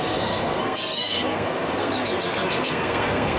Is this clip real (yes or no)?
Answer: no